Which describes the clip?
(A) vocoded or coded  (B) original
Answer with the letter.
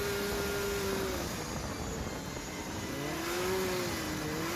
B